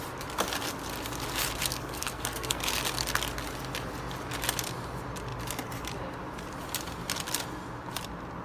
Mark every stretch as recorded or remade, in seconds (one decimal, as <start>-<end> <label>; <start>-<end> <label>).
0.0-1.7 recorded; 1.7-2.6 remade; 2.6-8.4 recorded